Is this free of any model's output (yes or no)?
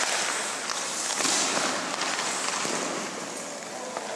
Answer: yes